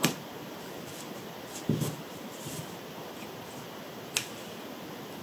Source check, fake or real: real